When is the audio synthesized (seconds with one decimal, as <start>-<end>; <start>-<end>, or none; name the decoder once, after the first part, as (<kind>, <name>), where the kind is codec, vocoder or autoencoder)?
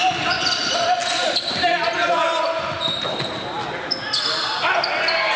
none